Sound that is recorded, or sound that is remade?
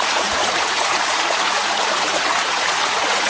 remade